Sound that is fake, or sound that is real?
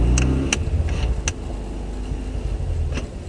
real